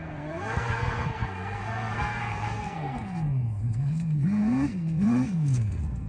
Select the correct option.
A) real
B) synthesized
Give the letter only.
B